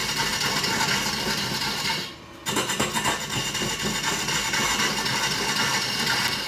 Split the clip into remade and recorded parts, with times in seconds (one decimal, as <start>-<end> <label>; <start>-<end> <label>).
0.0-6.5 recorded